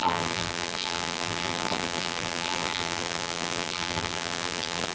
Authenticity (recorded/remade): remade